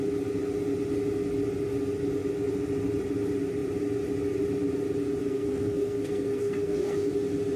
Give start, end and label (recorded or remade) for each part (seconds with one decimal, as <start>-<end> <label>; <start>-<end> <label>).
0.0-5.2 recorded; 5.2-7.1 remade; 7.1-7.6 recorded